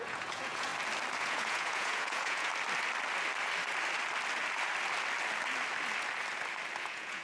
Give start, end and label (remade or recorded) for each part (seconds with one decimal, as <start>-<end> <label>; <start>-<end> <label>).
0.0-0.7 remade; 0.7-1.2 recorded; 1.2-2.5 remade; 2.5-6.8 recorded; 6.8-7.2 remade